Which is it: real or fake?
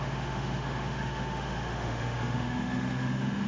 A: fake